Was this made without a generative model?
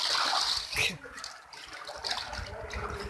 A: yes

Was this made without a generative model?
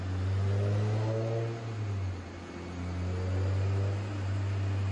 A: yes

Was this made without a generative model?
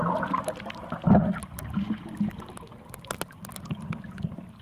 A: yes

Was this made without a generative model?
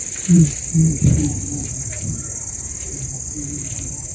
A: no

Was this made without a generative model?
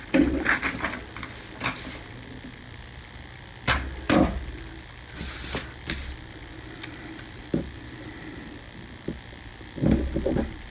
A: yes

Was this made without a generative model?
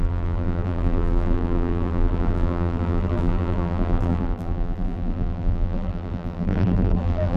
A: no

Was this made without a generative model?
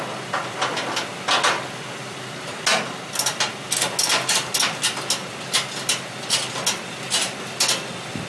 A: yes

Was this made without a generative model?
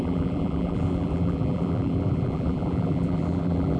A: no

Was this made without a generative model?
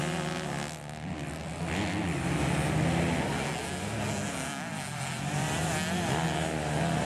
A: yes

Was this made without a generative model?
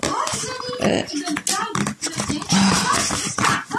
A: yes